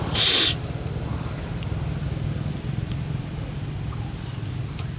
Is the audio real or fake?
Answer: fake